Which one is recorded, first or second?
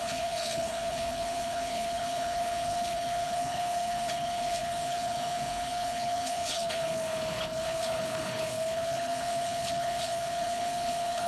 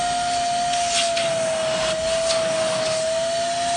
second